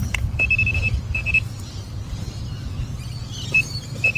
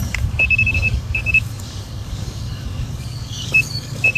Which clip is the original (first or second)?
first